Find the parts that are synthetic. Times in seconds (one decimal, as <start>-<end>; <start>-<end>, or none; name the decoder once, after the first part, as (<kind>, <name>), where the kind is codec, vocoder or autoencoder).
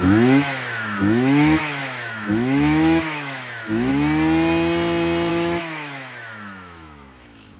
0.0-3.9 (autoencoder, DAC-VAE); 5.3-7.6